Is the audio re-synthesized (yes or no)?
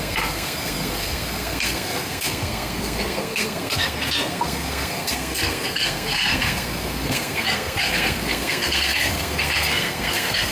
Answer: yes